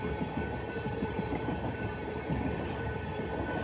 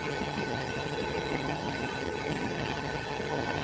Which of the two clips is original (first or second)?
first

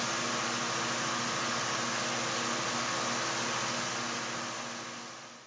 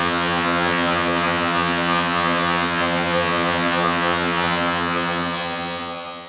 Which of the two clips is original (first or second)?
first